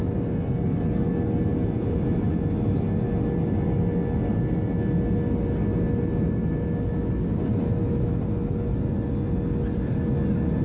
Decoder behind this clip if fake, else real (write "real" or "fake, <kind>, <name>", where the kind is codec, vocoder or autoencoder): real